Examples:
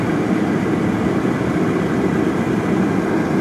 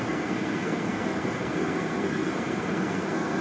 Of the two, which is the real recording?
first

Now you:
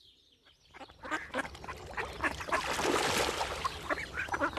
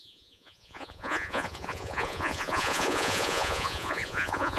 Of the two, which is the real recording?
first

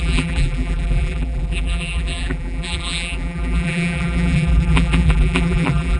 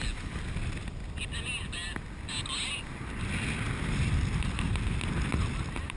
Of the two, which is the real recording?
second